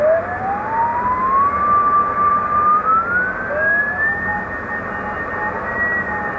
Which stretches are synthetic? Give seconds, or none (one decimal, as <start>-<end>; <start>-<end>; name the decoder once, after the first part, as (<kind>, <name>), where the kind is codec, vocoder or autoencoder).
none